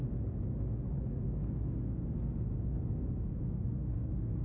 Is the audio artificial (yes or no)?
no